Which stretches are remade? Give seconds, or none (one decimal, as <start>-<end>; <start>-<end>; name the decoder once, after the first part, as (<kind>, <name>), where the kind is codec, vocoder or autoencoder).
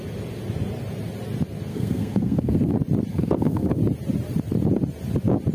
1.7-2.7 (codec, SNAC); 3.1-3.8